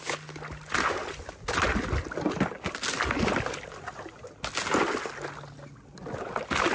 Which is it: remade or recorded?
recorded